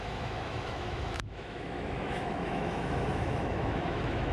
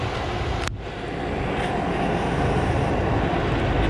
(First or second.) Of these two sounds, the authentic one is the second